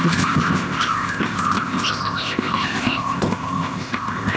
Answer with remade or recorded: remade